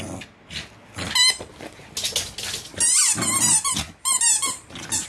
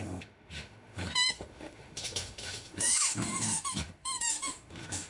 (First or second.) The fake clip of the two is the second